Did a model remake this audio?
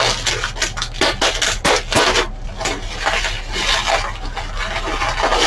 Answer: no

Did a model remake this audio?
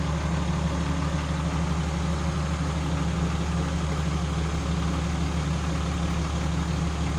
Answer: no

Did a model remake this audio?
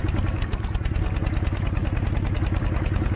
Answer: no